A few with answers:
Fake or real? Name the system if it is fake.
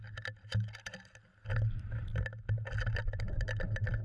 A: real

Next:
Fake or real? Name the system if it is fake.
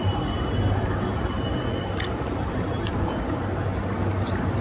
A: real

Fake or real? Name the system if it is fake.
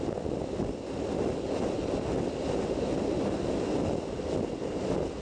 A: real